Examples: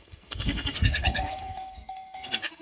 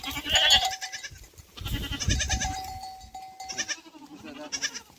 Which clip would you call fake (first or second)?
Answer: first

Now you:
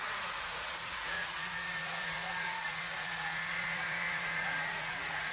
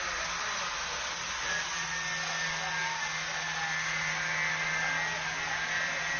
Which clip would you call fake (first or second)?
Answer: first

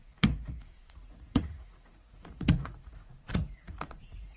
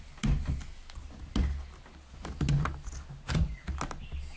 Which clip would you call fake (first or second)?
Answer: first